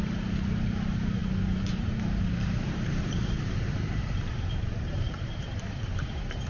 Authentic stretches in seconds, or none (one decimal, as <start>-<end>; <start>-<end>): none